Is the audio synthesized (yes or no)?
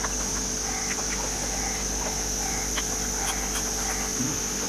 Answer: no